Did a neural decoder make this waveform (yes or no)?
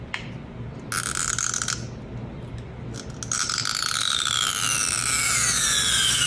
no